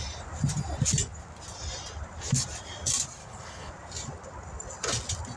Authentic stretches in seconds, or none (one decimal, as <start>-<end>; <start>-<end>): 0.0-3.2; 3.7-5.4